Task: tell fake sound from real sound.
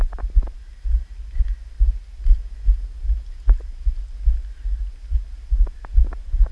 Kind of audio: real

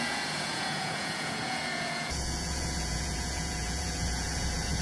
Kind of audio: fake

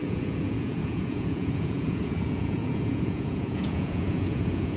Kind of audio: fake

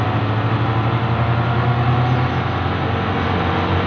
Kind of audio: real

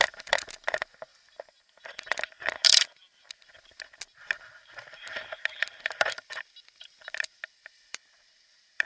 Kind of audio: real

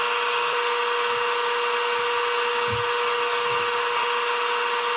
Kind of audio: real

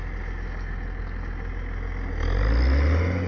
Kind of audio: real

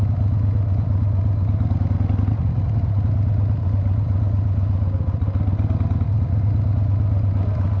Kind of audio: real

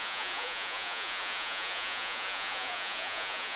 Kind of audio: fake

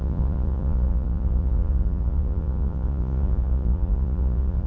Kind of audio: fake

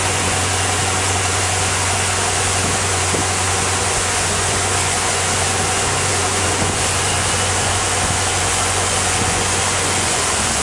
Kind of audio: fake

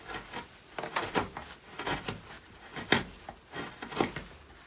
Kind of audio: real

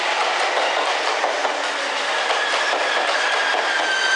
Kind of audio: real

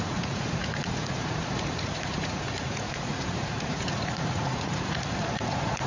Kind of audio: fake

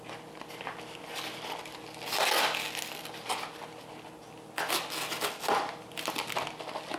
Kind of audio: real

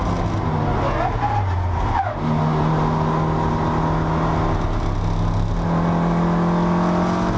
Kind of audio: real